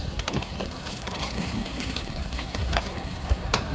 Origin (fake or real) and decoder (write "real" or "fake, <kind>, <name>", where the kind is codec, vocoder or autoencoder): fake, codec, SNAC